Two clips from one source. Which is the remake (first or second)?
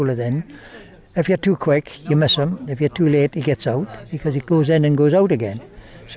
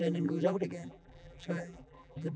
second